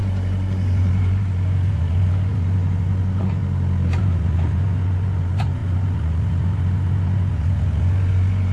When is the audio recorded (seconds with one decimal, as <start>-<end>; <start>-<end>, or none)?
3.4-4.0